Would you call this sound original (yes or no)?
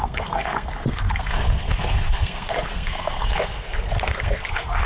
no